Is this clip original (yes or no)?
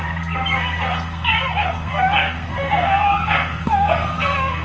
no